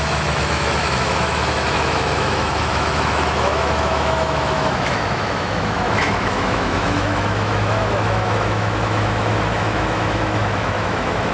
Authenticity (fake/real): fake